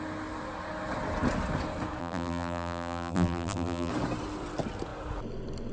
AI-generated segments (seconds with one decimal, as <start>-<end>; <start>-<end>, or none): 2.0-3.9